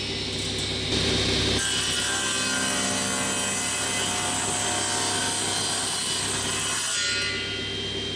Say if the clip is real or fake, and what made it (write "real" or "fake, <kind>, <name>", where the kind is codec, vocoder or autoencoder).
real